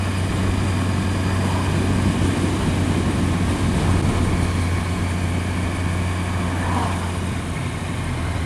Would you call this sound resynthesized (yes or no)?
no